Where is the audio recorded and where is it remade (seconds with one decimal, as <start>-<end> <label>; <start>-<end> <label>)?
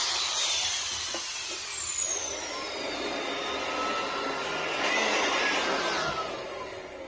0.0-7.1 recorded